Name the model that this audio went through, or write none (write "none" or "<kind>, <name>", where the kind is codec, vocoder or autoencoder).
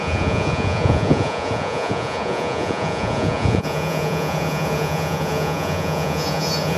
vocoder, Vocos